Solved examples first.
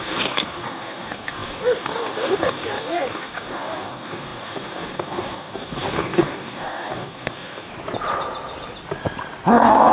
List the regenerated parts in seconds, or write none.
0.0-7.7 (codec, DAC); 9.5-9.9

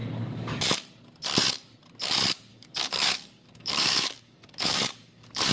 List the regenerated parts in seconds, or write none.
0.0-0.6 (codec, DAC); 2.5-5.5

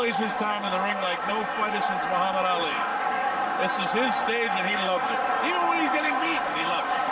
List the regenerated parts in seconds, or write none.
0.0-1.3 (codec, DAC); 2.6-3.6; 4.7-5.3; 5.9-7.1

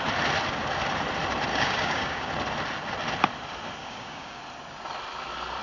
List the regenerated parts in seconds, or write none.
1.5-2.3 (codec, DAC); 3.8-4.4

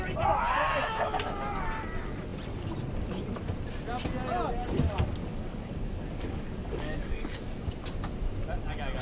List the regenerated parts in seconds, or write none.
5.3-7.6 (codec, DAC)

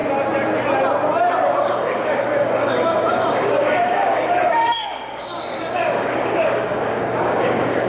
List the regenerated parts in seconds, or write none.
1.6-7.9 (codec, DAC)

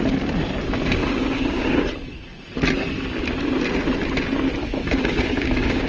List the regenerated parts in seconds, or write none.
1.0-1.8 (codec, DAC); 4.6-5.9